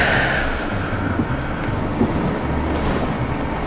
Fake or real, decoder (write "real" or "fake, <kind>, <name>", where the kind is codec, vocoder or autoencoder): real